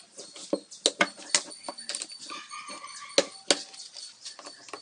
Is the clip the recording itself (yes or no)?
yes